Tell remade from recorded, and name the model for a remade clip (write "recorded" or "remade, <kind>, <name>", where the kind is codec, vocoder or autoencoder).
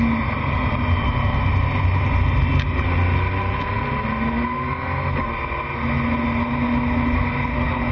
recorded